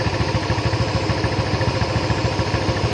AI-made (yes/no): no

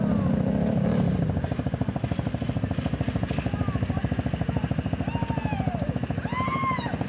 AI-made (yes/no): no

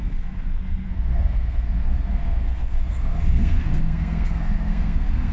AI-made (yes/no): yes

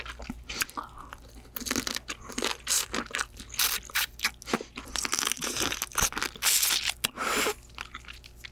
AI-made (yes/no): no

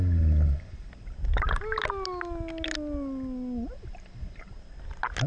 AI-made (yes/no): no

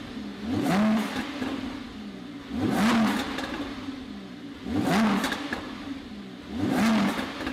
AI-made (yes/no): no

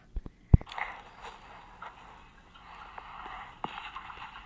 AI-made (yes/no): no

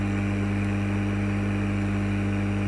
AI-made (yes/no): no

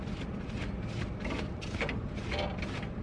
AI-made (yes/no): no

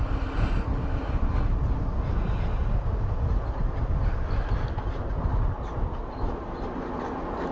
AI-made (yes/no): no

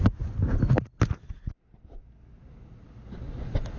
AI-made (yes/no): no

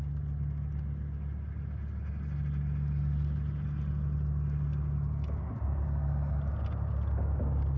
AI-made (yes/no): no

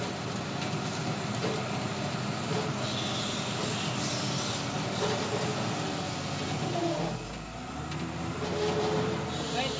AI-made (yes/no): no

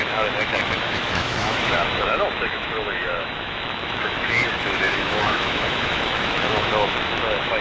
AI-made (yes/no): yes